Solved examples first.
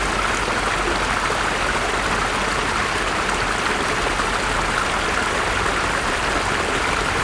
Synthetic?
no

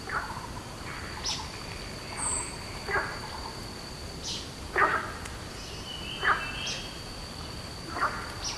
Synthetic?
no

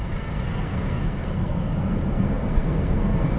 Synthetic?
yes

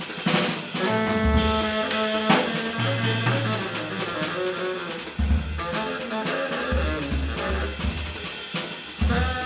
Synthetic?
no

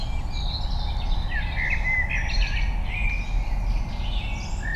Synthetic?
no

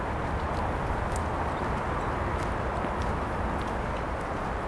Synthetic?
no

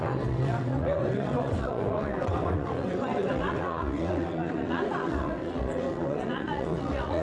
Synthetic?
yes